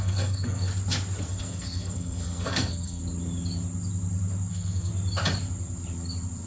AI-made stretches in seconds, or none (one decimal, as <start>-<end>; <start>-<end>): 0.0-0.7; 1.2-3.0; 4.5-4.9